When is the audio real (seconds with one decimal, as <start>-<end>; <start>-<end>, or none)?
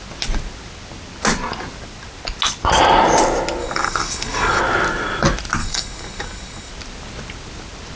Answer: 0.0-3.6; 4.6-5.6; 6.7-8.0